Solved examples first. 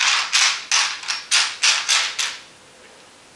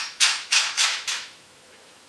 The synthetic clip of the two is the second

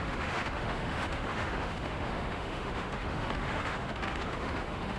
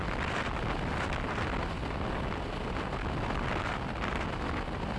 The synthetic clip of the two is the first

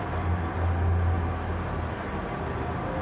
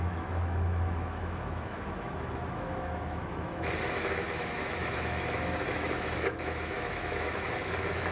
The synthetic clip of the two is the second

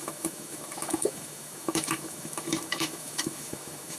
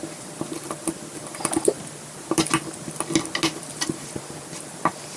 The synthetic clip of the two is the first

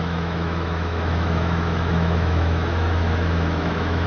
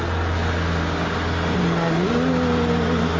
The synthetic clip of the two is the first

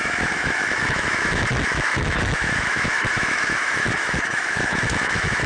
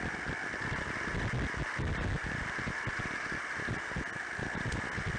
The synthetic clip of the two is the first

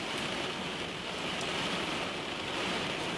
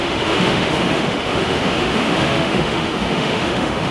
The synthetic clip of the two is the second